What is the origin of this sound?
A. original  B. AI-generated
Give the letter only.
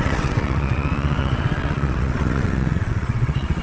B